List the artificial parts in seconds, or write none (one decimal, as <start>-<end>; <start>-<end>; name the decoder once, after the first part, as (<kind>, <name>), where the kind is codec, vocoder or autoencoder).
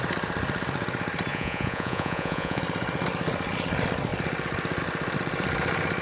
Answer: 1.3-2.6 (vocoder, Vocos)